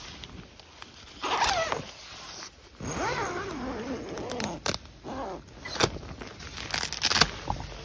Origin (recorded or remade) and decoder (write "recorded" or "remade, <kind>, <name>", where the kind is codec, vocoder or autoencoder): recorded